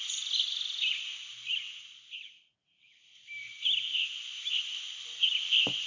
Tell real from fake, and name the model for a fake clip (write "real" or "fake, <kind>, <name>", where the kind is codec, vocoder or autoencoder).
real